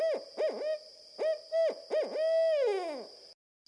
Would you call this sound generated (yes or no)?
no